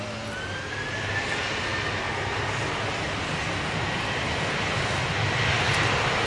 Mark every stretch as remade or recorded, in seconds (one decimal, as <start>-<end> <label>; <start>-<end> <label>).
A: 0.0-6.3 recorded